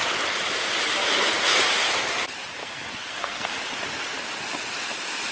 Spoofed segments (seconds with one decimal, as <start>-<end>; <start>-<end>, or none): 2.6-3.5